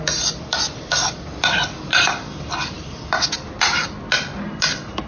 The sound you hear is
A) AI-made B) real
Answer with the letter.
B